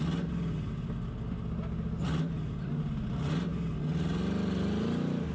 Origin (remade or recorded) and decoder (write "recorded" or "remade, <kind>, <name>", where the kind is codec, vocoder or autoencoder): recorded